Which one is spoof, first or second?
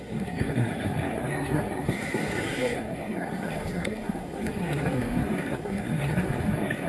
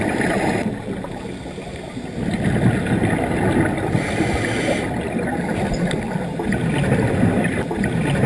first